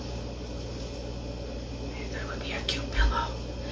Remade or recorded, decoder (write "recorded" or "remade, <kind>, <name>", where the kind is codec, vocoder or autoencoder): recorded